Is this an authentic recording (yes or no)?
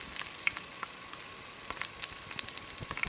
yes